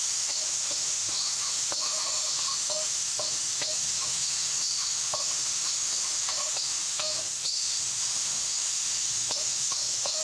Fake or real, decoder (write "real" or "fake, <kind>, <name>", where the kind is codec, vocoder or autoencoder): fake, autoencoder, DAC-VAE